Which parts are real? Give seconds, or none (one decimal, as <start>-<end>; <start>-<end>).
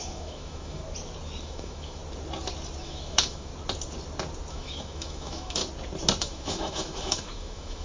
0.8-1.4; 2.0-2.8; 3.5-4.5; 5.6-6.2